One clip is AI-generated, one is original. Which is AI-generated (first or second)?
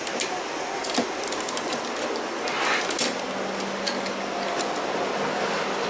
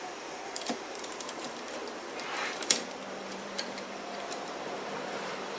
second